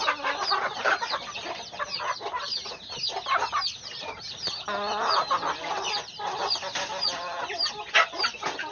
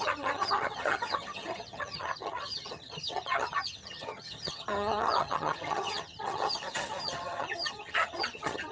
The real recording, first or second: first